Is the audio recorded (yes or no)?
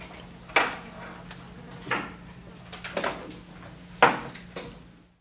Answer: yes